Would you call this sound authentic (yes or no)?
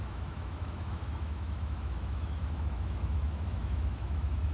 no